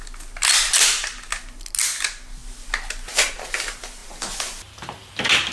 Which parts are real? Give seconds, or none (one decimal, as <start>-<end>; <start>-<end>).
0.0-5.5

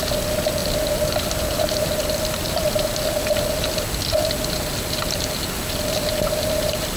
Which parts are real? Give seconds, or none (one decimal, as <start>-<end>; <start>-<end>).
0.0-7.0